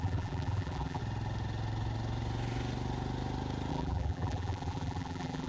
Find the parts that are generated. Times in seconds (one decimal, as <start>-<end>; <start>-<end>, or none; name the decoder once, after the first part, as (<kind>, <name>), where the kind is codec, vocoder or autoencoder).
0.0-1.0 (vocoder, BigVGAN v2); 3.7-5.5